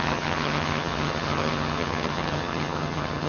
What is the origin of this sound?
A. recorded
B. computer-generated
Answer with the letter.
B